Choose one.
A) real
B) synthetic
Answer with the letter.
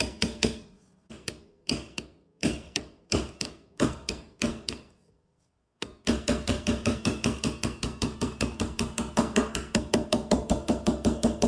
B